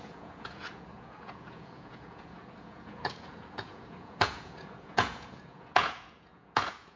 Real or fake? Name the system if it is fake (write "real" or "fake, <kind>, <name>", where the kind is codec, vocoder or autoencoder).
fake, vocoder, Vocos